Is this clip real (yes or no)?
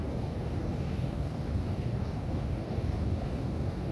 no